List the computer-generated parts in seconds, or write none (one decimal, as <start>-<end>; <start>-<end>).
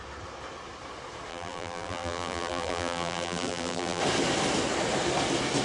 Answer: 1.3-4.0